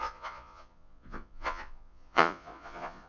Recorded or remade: remade